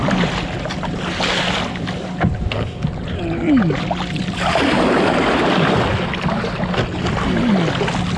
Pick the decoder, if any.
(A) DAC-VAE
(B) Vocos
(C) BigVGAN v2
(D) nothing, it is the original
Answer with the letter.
D